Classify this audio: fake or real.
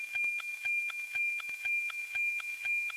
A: fake